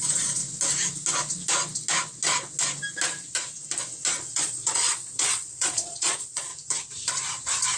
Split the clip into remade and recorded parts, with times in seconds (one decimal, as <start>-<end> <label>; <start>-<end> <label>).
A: 0.0-0.4 remade; 0.4-4.3 recorded; 4.3-6.5 remade; 6.5-7.8 recorded